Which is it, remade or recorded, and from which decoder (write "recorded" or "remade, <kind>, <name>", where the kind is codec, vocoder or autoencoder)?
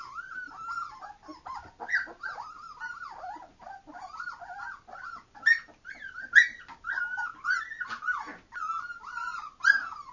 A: recorded